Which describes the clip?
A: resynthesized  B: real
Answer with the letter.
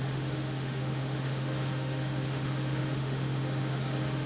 A